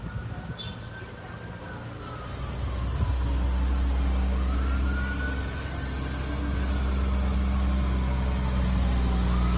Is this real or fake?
real